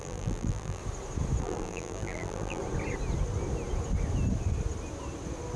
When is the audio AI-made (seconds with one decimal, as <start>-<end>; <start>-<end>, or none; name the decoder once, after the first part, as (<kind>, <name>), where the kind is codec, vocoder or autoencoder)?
0.0-0.8 (vocoder, BigVGAN v2); 1.4-2.6